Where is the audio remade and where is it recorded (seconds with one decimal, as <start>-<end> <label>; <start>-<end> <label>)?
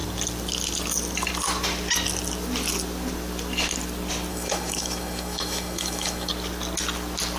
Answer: 0.0-4.3 recorded; 4.3-6.3 remade; 6.3-7.4 recorded